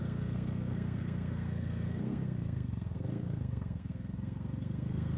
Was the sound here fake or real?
fake